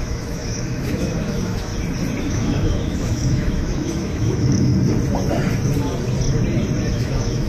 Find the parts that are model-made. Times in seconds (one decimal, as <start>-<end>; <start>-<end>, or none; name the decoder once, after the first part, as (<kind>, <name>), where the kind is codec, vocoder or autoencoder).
0.0-1.7 (autoencoder, DAC-VAE); 2.2-4.7; 6.9-7.5